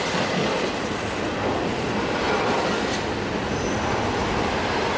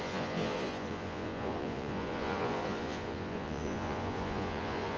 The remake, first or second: second